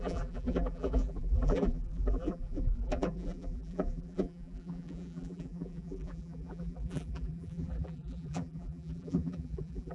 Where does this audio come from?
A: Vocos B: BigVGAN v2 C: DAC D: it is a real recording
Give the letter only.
B